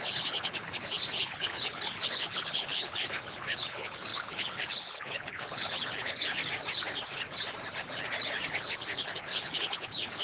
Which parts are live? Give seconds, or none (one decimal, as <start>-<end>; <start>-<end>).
6.4-8.5

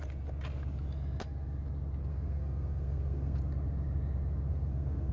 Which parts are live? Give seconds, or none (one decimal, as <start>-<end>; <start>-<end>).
0.0-2.1; 3.4-4.5

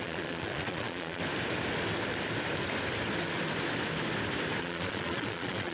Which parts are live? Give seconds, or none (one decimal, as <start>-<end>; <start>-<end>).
1.2-4.6

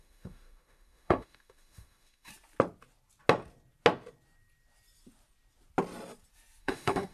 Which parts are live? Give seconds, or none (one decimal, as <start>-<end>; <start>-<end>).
2.3-6.6